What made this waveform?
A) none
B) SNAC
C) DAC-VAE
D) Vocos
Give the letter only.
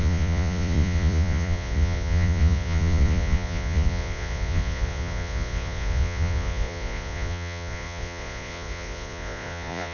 D